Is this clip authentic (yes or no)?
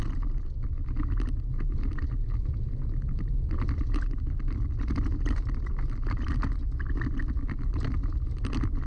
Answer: yes